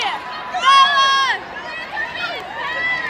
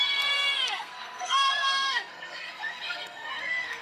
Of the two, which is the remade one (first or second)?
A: second